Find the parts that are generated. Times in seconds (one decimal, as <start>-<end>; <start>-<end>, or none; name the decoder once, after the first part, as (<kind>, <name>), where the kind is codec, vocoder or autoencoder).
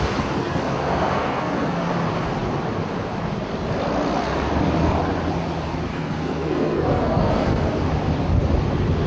0.4-1.9 (codec, SNAC); 5.9-7.8